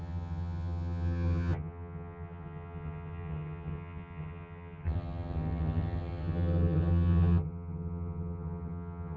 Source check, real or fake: fake